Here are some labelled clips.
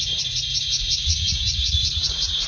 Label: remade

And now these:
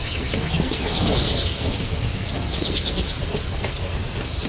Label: remade